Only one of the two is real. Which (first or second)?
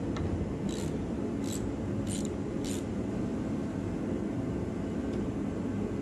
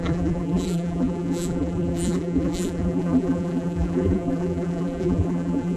first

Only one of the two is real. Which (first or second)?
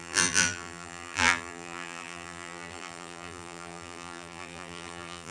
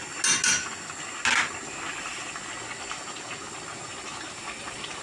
second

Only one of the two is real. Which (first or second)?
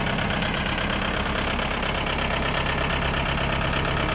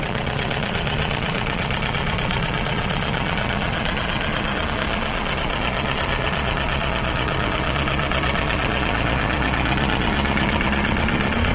first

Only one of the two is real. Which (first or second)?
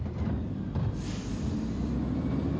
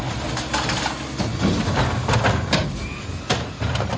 second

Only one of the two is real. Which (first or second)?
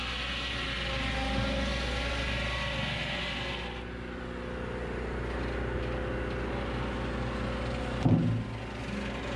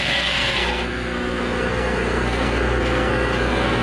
first